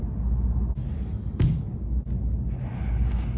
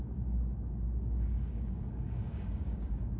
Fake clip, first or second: second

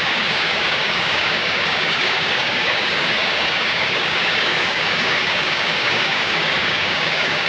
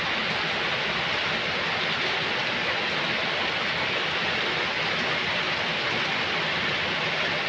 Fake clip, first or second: first